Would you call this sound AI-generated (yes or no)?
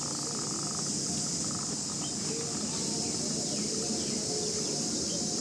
no